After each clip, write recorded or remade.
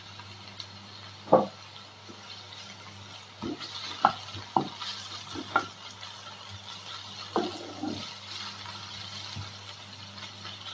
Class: recorded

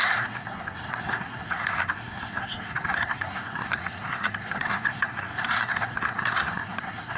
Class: remade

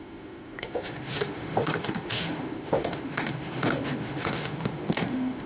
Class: remade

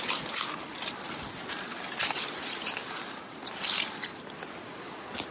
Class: recorded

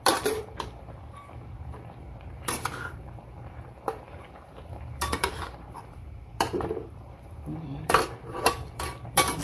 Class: remade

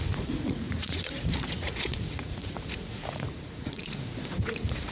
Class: remade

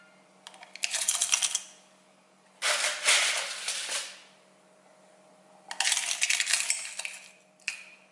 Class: recorded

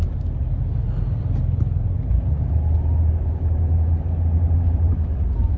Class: recorded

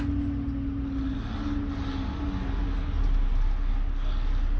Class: recorded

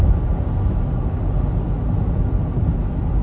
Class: recorded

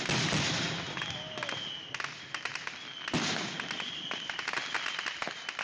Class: recorded